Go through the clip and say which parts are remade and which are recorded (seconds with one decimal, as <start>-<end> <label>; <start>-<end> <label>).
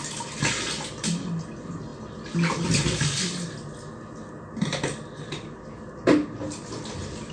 0.0-7.3 recorded